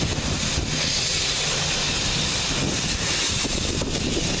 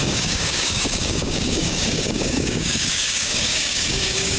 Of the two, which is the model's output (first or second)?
second